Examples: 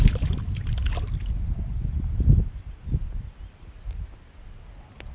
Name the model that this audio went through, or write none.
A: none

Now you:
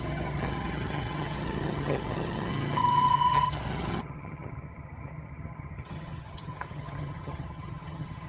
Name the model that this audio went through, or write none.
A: vocoder, HiFi-GAN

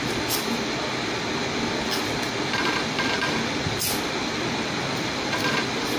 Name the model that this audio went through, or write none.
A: none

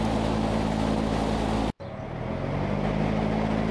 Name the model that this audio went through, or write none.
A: none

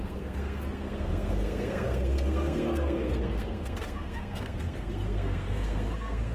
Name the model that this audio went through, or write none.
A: codec, SNAC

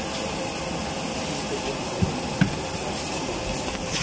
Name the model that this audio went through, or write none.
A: none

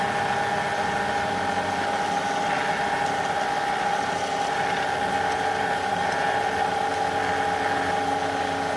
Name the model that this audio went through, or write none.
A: none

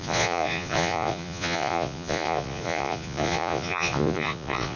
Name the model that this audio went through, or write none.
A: vocoder, Vocos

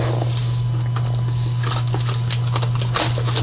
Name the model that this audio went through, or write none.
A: none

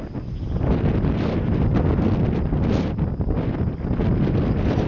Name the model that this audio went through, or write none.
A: none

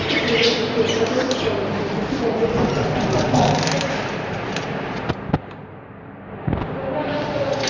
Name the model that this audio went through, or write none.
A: none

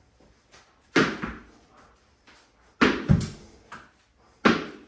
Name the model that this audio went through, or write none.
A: none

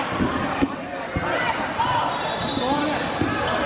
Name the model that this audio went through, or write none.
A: none